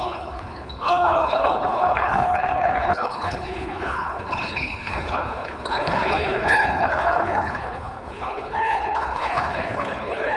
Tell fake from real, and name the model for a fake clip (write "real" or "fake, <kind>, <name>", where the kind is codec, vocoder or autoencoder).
fake, codec, HILCodec